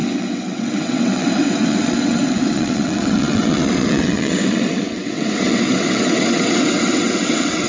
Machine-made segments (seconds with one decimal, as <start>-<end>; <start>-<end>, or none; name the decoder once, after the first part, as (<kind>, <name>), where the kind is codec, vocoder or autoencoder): 0.0-7.7 (vocoder, WaveNeXt)